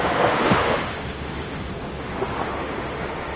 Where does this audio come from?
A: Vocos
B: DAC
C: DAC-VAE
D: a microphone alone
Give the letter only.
C